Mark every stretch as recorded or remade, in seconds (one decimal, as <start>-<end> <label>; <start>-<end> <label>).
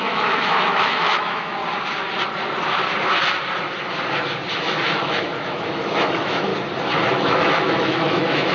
0.0-1.6 remade; 1.6-4.5 recorded; 4.5-6.5 remade; 6.5-7.1 recorded; 7.1-8.5 remade